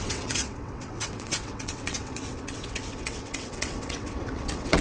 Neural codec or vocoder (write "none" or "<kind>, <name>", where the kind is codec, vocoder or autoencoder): vocoder, WaveNeXt